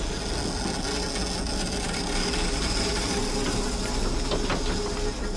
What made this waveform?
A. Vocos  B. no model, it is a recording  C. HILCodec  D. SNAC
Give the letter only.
B